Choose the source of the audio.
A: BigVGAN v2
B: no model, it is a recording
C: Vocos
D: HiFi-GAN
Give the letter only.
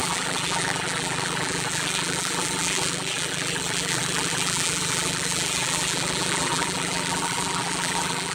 A